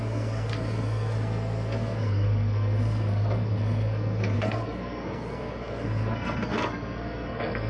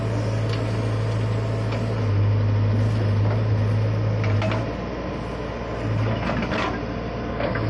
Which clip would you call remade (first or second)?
first